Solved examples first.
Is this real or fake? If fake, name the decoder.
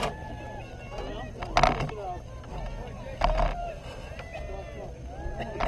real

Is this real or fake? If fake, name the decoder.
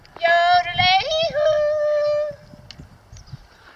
real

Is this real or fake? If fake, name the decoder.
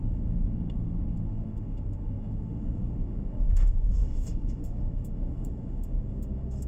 fake, autoencoder, DAC-VAE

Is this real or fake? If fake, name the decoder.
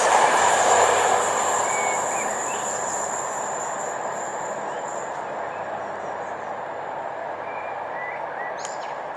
real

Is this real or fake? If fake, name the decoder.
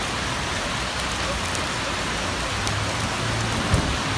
real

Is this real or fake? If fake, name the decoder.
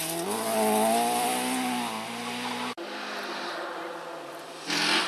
real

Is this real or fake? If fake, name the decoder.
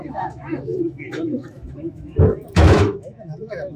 fake, autoencoder, DAC-VAE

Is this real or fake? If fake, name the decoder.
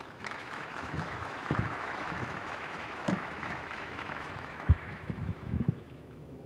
fake, autoencoder, DAC-VAE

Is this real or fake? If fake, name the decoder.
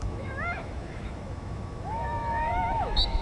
fake, autoencoder, DAC-VAE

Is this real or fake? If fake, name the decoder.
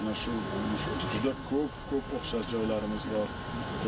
real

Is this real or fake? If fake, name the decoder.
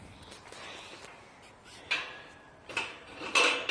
real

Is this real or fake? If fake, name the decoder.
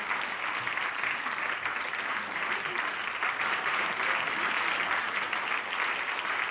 real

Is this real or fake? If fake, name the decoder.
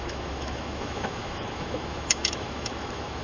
fake, autoencoder, DAC-VAE